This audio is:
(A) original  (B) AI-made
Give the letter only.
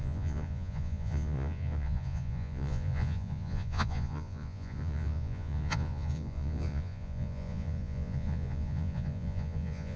B